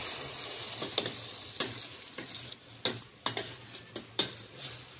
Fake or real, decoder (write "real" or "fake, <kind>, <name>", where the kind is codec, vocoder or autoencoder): real